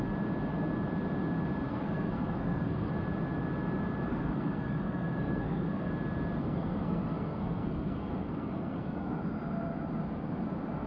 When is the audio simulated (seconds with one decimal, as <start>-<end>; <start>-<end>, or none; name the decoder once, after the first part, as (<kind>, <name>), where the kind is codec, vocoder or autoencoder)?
1.7-2.9 (codec, SNAC); 4.1-5.9; 6.4-9.2